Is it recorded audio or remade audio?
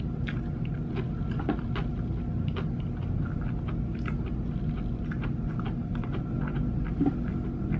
recorded